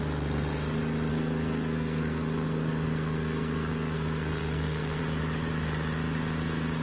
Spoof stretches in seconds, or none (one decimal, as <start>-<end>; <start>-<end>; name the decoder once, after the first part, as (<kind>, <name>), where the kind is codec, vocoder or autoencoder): 1.1-5.0 (codec, SNAC)